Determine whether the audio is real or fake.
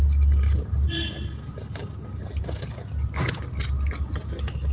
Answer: real